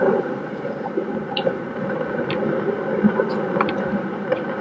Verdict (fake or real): fake